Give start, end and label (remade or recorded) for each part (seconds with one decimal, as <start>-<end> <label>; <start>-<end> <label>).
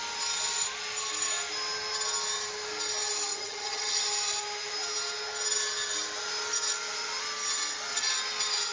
0.0-3.3 recorded; 3.3-4.0 remade; 4.0-8.7 recorded